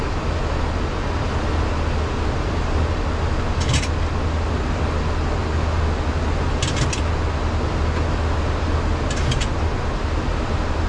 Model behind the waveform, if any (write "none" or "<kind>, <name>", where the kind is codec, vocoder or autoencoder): none